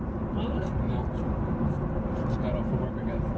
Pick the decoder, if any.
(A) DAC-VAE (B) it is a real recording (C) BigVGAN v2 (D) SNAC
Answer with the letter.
C